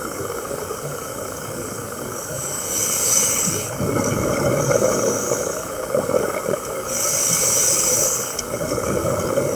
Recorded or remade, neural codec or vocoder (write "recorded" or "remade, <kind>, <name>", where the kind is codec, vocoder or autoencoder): remade, codec, DAC